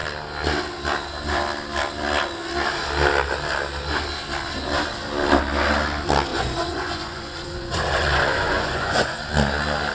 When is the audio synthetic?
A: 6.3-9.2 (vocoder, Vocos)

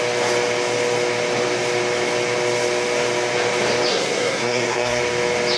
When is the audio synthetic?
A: 3.9-5.0 (codec, SNAC)

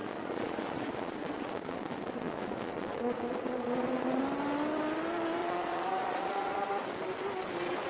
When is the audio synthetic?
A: 0.0-4.2 (vocoder, Vocos); 5.4-6.8

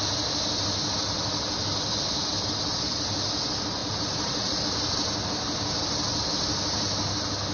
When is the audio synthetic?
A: 3.8-4.6 (vocoder, BigVGAN v2)

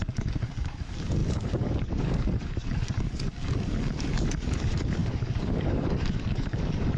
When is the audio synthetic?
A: 0.0-7.0 (codec, DAC)

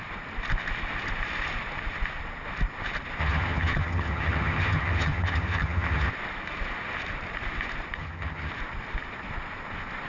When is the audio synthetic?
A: 3.2-6.1 (vocoder, HiFi-GAN); 8.0-8.5

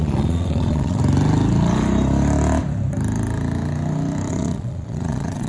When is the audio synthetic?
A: 0.0-1.0 (vocoder, Vocos); 4.3-5.5

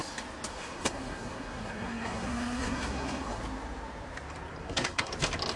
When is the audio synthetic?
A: 0.5-3.4 (codec, SNAC); 4.6-5.1